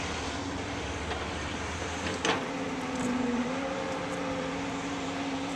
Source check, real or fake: fake